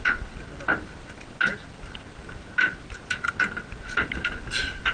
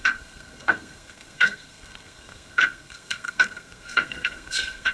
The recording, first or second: first